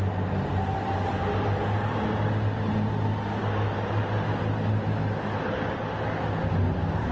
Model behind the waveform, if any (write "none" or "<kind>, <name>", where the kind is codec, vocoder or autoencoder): none